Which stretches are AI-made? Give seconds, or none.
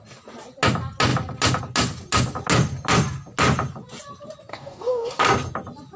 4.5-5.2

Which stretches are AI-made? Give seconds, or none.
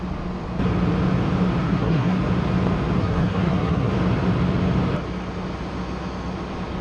1.6-2.2; 3.0-3.9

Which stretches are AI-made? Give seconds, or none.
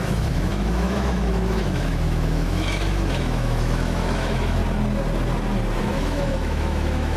0.0-4.6; 5.8-7.2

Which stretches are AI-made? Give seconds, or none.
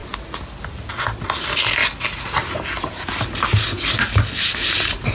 0.5-1.8